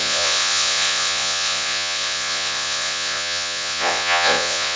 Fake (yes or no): yes